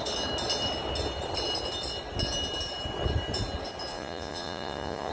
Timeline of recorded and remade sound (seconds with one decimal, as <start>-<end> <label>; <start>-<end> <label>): 0.0-3.9 recorded; 3.9-5.1 remade

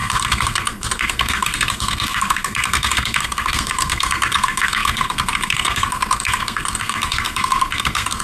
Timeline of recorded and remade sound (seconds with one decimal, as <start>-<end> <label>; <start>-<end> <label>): 0.0-8.2 remade

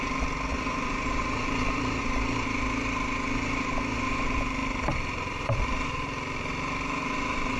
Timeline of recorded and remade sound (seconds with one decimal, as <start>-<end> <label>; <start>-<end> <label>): 0.0-0.5 recorded; 0.5-2.0 remade; 2.0-4.6 recorded; 4.6-6.5 remade; 6.5-7.6 recorded

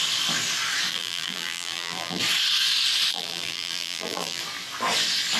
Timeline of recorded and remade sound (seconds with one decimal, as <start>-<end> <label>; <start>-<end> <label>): 0.0-0.9 recorded; 0.9-2.2 remade; 2.2-3.1 recorded; 3.1-4.4 remade; 4.4-5.4 recorded

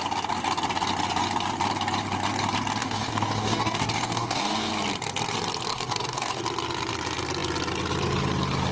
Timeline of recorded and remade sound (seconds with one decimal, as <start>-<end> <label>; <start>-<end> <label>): 0.0-2.8 recorded; 2.8-4.7 remade; 4.7-5.7 recorded; 5.7-6.4 remade; 6.4-8.7 recorded